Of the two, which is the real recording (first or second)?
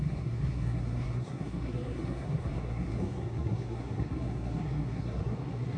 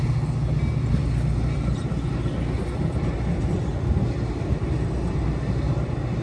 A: second